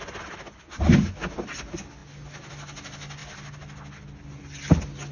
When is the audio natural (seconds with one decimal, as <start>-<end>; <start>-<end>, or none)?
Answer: 0.0-5.1